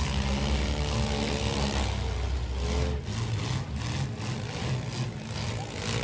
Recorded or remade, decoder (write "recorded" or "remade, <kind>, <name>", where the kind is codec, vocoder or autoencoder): recorded